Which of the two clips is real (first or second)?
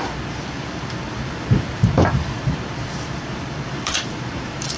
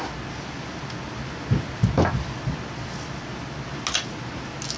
second